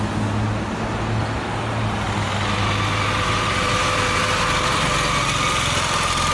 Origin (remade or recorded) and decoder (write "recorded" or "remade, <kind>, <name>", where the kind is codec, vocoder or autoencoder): recorded